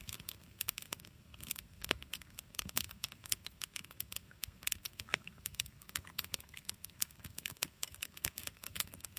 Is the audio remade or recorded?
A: remade